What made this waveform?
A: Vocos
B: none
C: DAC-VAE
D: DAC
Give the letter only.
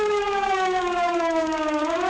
D